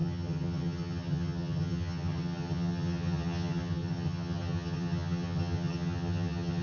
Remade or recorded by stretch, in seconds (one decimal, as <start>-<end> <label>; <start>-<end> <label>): 0.0-6.6 remade